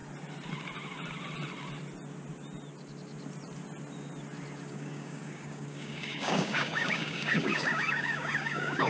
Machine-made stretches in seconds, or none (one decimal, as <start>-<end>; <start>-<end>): 4.7-8.9